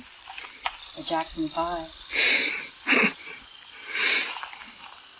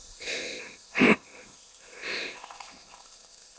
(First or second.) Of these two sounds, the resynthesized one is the second